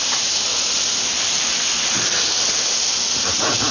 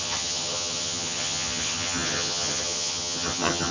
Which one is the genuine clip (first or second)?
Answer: first